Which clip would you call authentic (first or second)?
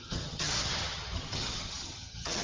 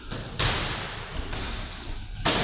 second